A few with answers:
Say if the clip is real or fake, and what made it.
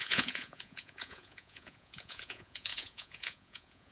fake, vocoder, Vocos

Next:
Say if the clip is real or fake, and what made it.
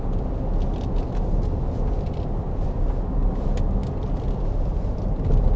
real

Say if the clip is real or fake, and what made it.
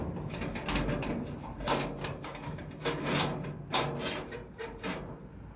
real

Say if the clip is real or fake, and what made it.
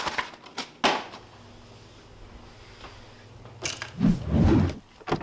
real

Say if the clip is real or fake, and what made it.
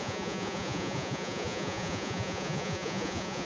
fake, vocoder, Vocos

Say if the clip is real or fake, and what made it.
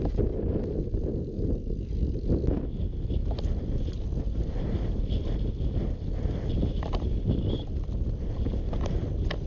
real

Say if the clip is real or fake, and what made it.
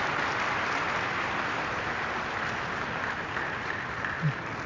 real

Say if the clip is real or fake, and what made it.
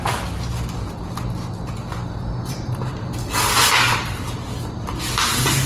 real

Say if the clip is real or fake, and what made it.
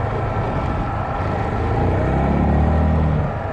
real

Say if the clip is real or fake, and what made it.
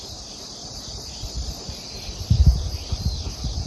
real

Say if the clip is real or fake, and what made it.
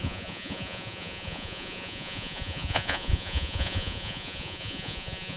fake, vocoder, Vocos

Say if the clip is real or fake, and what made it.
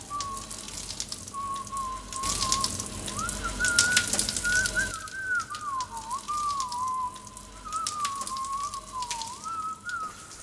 real